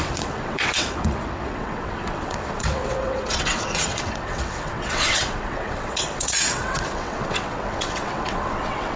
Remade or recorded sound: remade